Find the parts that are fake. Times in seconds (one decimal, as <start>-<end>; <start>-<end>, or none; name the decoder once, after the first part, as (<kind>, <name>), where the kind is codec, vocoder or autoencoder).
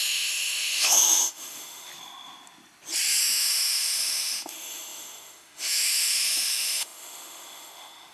0.0-1.9 (autoencoder, DAC-VAE); 3.2-8.1